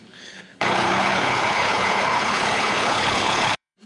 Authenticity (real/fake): fake